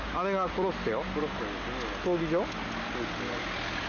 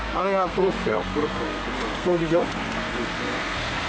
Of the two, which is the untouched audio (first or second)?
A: first